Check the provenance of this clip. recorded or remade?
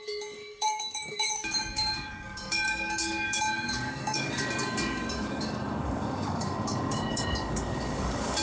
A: remade